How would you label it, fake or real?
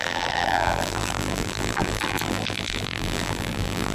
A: fake